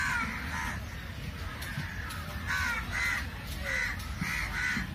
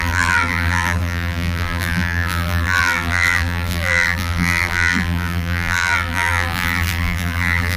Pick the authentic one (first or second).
first